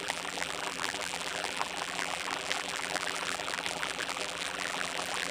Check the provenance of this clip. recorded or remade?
remade